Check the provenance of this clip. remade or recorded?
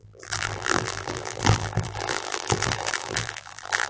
remade